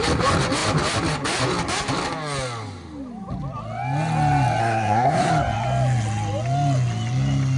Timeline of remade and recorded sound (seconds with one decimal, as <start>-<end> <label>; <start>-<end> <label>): 0.0-4.6 recorded; 4.6-5.3 remade; 5.3-7.6 recorded